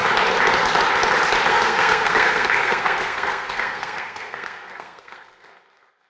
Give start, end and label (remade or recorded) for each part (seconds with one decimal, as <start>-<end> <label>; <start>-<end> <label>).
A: 0.0-1.5 recorded; 1.5-6.1 remade